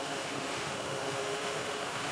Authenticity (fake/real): fake